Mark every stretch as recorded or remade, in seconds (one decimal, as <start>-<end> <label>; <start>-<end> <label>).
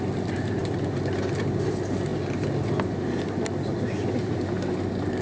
0.0-5.2 recorded